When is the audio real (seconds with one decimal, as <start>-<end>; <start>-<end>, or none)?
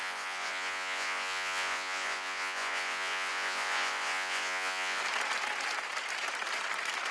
5.0-7.1